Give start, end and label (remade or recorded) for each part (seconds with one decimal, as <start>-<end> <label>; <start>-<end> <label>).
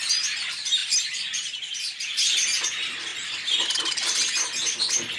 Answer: 0.0-5.2 recorded